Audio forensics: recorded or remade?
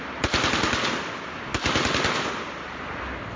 recorded